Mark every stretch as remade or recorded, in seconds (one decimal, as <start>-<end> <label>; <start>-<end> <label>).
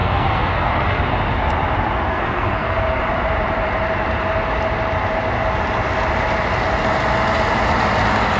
0.0-1.0 remade; 1.0-2.1 recorded; 2.1-3.0 remade; 3.0-8.4 recorded